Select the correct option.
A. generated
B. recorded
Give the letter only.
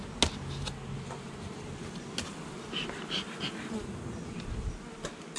B